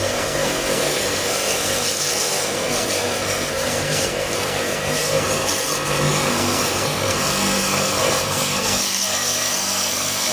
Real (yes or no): no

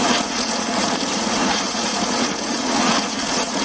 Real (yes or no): no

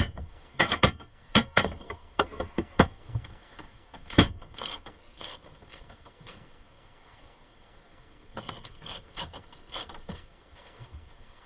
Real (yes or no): no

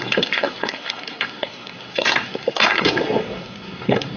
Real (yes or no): no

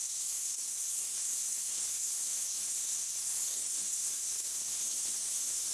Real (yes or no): no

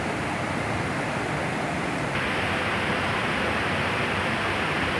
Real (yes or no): yes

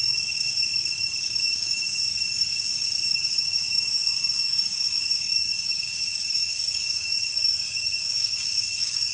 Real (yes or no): no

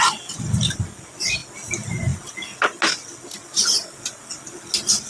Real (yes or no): yes